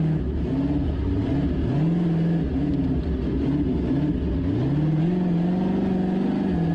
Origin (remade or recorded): recorded